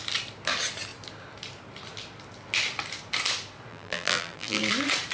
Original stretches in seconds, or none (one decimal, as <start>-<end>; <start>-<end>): 0.0-3.7; 4.6-5.1